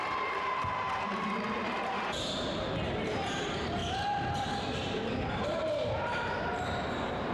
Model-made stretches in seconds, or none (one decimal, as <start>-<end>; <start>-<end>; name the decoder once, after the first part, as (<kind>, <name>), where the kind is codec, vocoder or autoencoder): 0.0-3.8 (vocoder, BigVGAN v2); 5.3-7.3